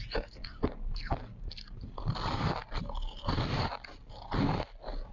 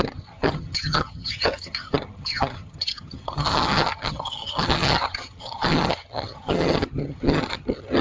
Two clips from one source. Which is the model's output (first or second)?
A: second